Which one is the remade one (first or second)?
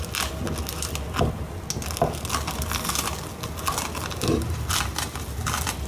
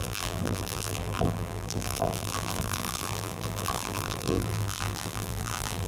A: second